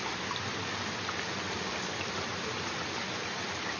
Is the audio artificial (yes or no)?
no